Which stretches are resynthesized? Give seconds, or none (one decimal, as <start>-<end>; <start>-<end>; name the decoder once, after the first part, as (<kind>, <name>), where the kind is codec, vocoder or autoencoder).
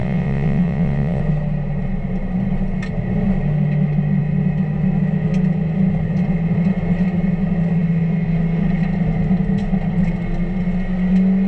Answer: 0.0-1.2 (vocoder, WaveNeXt)